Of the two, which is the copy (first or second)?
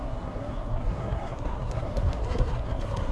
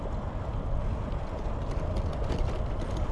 first